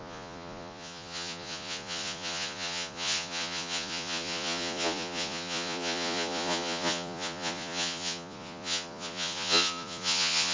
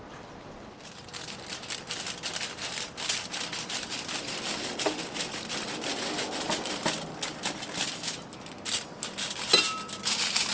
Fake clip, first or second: first